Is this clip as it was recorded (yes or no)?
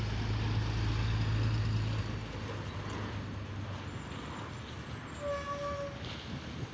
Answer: yes